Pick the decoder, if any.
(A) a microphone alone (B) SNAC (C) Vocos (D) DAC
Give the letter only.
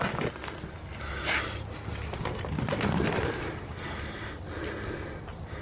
A